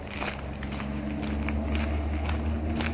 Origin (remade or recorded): recorded